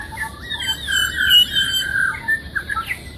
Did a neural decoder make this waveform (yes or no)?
no